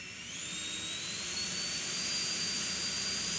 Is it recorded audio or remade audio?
recorded